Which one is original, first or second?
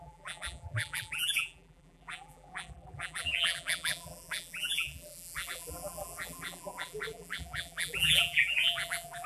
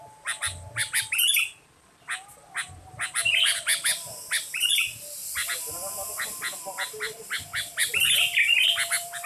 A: second